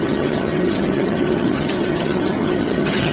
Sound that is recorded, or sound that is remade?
remade